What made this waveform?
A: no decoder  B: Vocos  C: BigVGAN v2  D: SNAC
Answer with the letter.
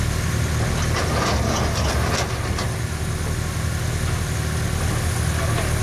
A